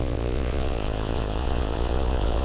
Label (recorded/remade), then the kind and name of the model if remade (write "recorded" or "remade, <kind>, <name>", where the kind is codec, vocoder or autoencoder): remade, vocoder, Vocos